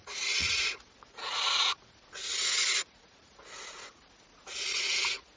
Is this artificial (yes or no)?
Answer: yes